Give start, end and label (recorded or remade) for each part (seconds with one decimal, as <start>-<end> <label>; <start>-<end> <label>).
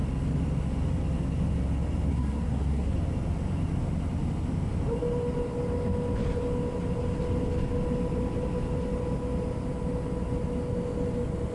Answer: 0.0-2.1 recorded; 2.1-2.9 remade; 2.9-11.5 recorded